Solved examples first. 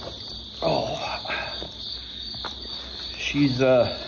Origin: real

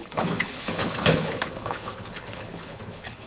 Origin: fake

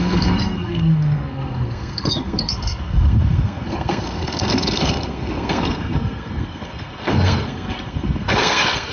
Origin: fake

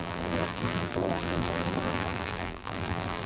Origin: fake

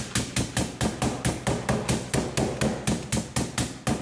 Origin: real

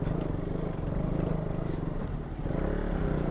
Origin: real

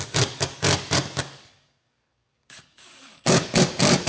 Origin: fake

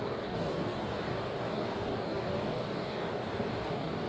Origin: fake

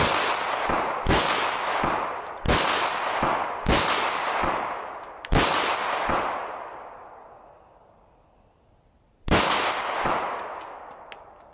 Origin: real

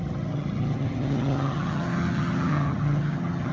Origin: fake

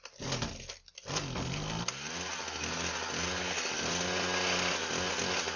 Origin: real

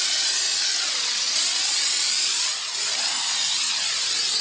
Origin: real